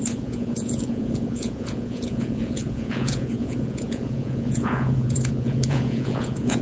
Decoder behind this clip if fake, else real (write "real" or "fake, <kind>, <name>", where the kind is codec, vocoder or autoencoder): fake, vocoder, Vocos